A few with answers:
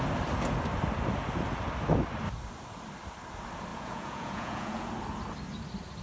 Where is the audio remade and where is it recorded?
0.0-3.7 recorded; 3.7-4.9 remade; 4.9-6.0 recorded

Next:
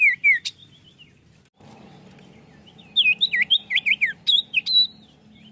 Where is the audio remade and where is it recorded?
0.0-5.5 recorded

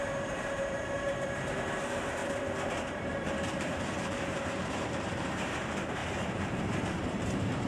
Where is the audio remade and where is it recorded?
0.0-2.2 remade; 2.2-2.8 recorded; 2.8-7.7 remade